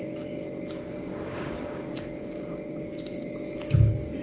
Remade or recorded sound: remade